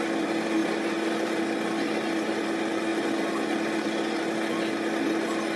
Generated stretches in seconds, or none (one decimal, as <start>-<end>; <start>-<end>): none